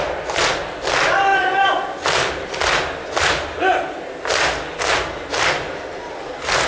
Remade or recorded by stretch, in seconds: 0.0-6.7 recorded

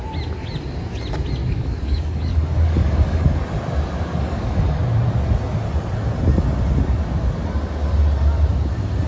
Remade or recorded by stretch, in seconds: 0.0-1.4 recorded; 1.4-3.4 remade; 3.4-4.1 recorded; 4.1-4.8 remade; 4.8-9.1 recorded